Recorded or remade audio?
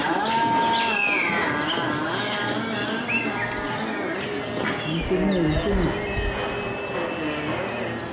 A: recorded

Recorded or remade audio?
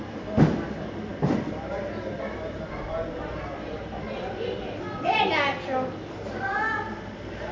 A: recorded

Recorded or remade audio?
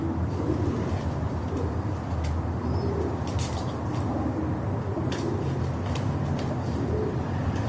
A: recorded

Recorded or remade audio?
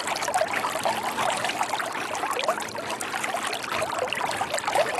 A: recorded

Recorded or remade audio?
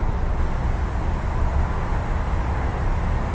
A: recorded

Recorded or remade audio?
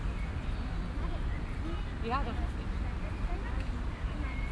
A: recorded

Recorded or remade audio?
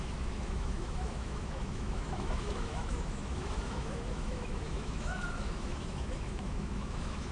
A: remade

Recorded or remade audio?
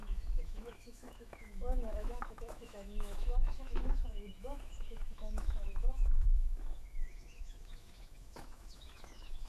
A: remade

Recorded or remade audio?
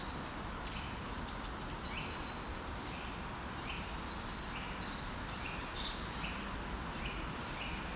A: recorded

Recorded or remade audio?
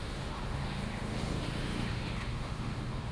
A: remade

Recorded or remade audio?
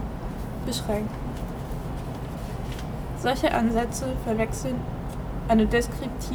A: recorded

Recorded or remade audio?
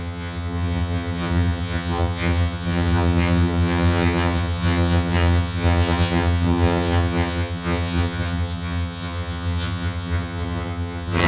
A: remade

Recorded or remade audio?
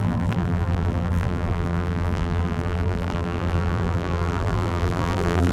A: remade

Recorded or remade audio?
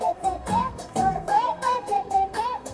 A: remade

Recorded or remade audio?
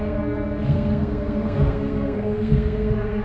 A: remade